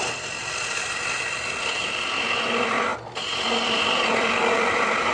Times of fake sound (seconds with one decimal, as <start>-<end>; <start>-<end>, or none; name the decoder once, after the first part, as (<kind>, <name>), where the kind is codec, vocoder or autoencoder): 0.0-2.9 (vocoder, BigVGAN v2); 3.8-5.1